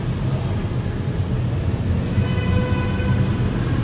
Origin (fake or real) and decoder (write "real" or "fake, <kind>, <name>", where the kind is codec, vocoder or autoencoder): real